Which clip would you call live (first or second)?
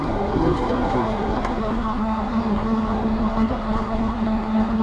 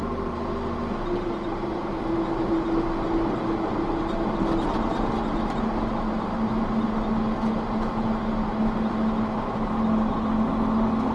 second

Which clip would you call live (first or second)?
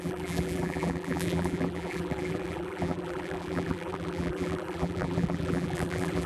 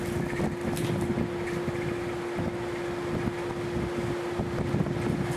second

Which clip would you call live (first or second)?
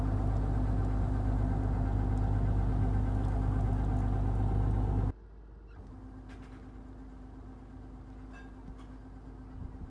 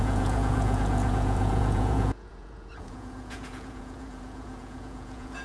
first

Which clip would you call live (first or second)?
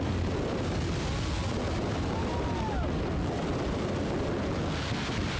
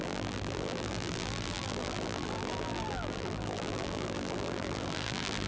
first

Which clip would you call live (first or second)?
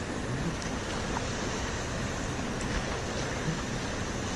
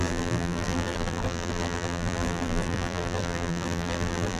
first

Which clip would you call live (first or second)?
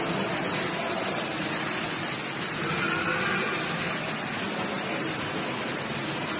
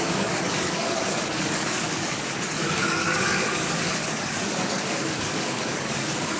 first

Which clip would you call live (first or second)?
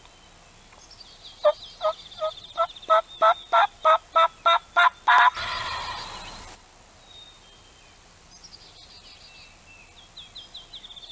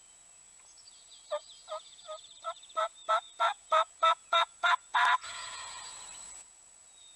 first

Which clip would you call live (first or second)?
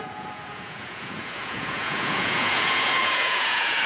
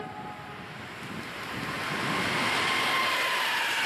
second